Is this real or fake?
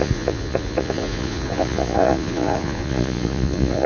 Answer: fake